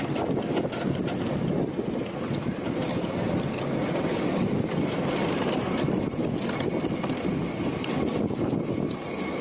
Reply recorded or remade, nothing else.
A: recorded